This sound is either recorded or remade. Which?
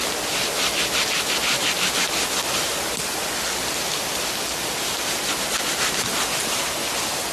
recorded